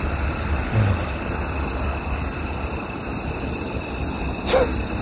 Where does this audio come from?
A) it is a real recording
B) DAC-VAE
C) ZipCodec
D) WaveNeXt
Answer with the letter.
A